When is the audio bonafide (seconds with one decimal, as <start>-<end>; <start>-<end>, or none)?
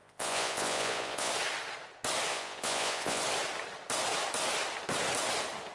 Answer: 1.3-2.3; 3.2-5.7